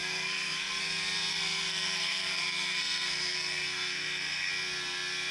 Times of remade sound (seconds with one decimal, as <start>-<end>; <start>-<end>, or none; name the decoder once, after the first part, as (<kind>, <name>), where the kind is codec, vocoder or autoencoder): 0.0-0.8 (codec, SNAC); 1.3-4.5